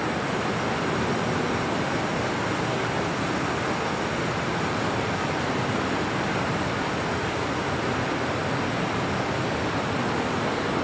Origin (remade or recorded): recorded